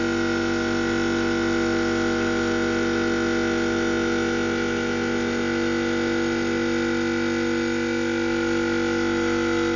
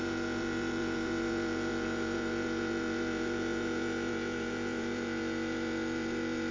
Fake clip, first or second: second